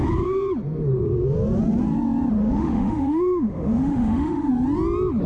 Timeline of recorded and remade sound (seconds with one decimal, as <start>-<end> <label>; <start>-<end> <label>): 0.0-2.4 recorded; 2.4-4.5 remade; 4.5-5.3 recorded